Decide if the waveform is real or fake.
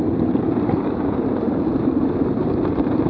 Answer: fake